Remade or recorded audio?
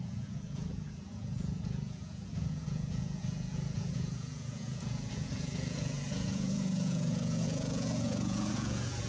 remade